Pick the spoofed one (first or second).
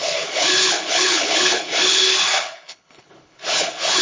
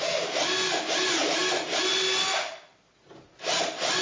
first